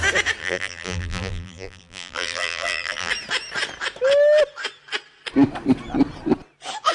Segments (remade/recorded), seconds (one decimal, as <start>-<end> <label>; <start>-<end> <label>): 0.0-0.4 recorded; 0.4-3.1 remade; 3.1-6.9 recorded